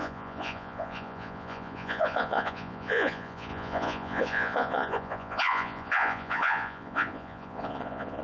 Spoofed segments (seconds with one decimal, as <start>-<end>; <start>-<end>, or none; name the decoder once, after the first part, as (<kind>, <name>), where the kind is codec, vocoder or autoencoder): 0.0-8.2 (vocoder, Vocos)